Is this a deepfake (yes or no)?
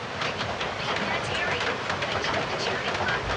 no